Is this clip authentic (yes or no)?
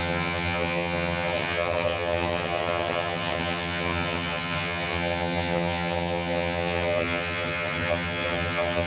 no